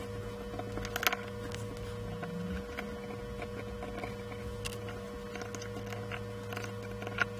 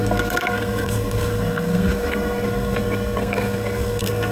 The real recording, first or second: first